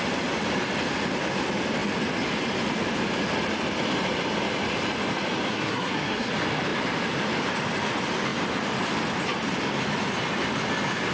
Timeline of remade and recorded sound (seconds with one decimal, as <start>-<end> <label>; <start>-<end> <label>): 0.0-5.5 recorded; 5.5-6.3 remade; 6.3-11.1 recorded